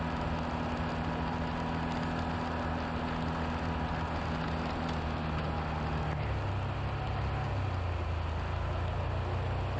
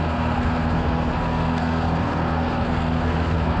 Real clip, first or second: first